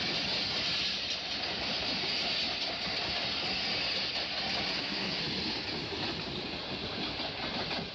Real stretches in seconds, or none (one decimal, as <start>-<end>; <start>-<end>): 0.0-4.7; 5.2-7.9